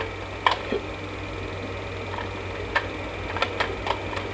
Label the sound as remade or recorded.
recorded